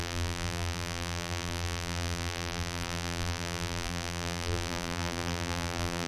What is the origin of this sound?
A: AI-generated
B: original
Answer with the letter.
A